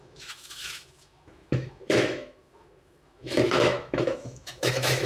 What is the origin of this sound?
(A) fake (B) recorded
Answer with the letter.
A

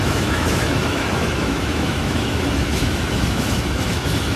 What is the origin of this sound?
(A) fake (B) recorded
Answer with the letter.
A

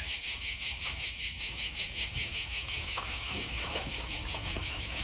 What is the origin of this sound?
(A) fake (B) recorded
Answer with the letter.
A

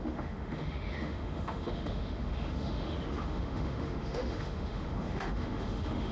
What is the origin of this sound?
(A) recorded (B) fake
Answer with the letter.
B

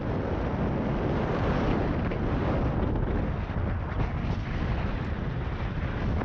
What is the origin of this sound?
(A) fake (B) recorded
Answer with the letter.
B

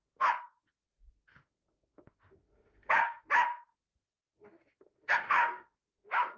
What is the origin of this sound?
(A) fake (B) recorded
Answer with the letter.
A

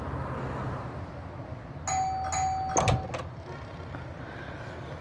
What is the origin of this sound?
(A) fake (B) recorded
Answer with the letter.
B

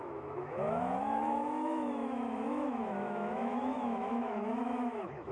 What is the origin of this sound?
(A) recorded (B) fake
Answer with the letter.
B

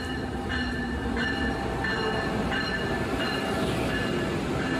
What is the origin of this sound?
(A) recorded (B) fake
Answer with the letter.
A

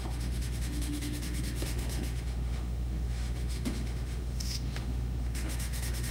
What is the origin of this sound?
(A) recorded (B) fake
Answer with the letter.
B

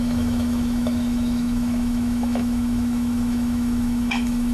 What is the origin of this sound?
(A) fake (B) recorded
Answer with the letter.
A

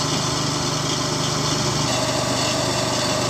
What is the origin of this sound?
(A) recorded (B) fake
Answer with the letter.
A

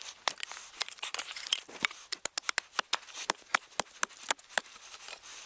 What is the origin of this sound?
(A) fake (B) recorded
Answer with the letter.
B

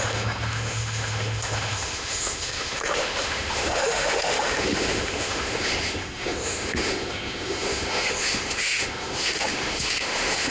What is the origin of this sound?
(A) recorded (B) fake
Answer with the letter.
B